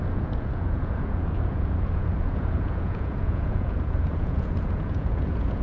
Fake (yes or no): yes